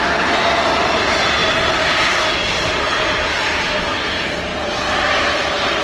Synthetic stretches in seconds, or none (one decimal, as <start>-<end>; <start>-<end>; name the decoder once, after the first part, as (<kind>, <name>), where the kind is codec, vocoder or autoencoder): 1.4-3.8 (vocoder, BigVGAN v2); 4.5-5.3